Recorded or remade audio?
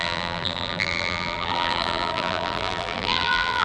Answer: remade